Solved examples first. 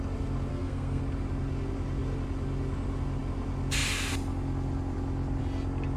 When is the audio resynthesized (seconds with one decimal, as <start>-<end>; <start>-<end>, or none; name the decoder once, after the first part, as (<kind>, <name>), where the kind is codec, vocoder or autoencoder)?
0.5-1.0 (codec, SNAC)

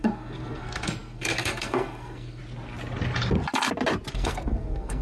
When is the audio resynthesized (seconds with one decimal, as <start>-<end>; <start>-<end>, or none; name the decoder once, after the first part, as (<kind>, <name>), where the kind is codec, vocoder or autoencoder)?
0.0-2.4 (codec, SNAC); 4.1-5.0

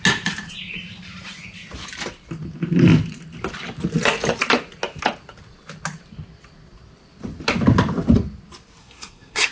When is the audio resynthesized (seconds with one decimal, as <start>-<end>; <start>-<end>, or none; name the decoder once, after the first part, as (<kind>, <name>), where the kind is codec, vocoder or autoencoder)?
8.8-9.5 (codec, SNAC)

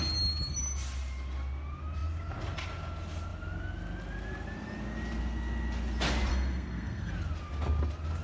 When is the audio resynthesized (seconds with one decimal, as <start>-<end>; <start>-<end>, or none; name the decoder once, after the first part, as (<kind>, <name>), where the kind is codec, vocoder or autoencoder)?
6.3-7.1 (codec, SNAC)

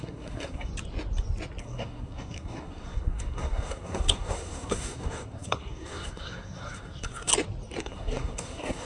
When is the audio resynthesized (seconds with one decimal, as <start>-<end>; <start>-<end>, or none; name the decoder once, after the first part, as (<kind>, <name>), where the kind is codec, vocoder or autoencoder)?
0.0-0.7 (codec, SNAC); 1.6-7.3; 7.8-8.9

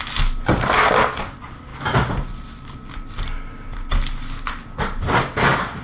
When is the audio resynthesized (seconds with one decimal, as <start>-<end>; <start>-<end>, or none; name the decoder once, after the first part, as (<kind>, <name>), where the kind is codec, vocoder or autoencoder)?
none

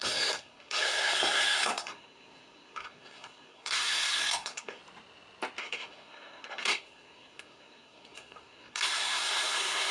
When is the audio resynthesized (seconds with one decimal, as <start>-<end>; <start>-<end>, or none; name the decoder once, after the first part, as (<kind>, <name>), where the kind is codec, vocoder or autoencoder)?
0.0-4.8 (codec, SNAC); 5.6-9.9

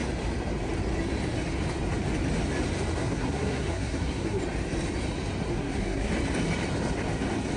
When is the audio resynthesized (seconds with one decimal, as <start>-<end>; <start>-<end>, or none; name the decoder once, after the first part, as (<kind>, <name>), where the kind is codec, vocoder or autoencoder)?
3.0-4.4 (codec, SNAC); 5.5-6.1